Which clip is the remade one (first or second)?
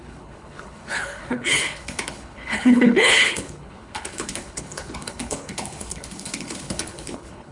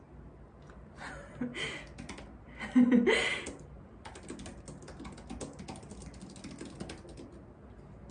first